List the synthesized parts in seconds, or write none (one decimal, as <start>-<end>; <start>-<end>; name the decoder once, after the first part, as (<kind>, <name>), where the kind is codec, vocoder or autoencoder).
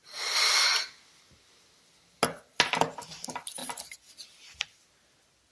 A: none